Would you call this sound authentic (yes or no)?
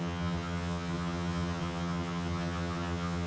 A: no